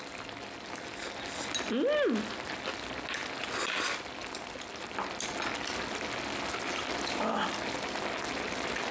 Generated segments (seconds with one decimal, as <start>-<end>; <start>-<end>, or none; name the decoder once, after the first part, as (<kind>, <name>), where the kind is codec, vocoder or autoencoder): none